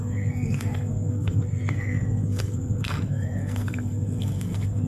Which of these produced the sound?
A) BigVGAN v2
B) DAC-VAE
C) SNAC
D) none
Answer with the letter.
C